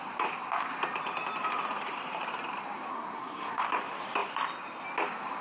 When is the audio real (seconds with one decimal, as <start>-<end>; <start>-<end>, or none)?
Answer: 0.0-2.9; 3.6-5.4